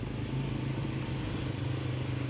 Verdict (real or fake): real